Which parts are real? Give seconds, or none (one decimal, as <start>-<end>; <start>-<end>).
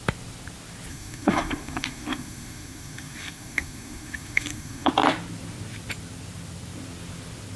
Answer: 0.0-0.9; 4.9-7.6